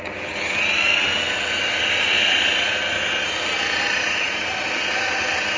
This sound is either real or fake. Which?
real